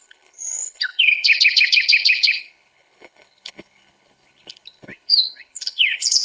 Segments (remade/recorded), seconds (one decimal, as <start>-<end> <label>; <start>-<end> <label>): 0.0-6.2 remade